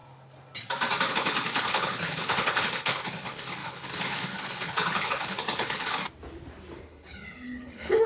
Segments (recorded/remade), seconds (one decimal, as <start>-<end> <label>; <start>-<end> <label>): 0.0-1.1 recorded; 1.1-6.0 remade; 6.0-6.9 recorded; 6.9-8.1 remade